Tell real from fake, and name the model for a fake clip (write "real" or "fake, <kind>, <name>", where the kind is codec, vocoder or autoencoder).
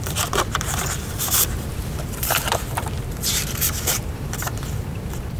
fake, vocoder, BigVGAN v2